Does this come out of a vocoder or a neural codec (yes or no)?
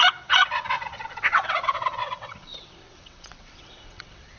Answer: yes